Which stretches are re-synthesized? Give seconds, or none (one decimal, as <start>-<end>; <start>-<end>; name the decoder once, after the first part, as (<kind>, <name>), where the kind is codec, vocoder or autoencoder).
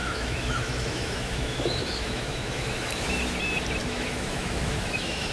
0.0-3.2 (autoencoder, DAC-VAE); 3.8-5.3